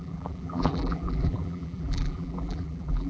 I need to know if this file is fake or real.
fake